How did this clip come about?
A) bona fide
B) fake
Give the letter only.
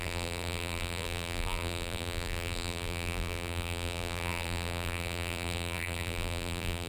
B